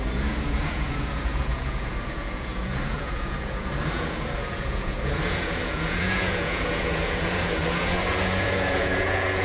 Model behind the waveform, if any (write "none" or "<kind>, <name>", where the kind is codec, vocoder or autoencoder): vocoder, Vocos